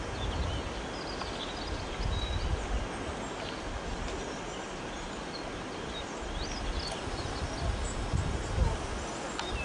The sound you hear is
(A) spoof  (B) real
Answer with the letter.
B